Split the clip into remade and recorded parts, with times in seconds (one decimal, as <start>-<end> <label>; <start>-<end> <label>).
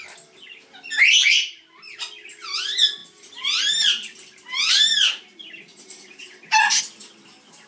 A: 0.0-3.0 recorded; 3.0-6.8 remade; 6.8-7.7 recorded